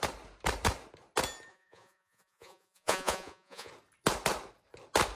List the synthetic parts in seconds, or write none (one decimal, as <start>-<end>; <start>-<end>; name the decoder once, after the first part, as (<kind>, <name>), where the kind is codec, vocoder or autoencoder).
1.5-3.7 (vocoder, Vocos)